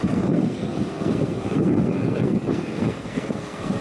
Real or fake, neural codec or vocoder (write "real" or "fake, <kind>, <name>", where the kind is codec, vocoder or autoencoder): fake, codec, SNAC